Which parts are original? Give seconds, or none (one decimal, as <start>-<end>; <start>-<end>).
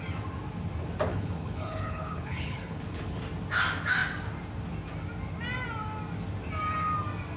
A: 0.0-1.1; 3.2-7.4